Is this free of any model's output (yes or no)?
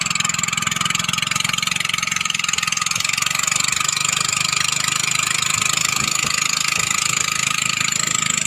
yes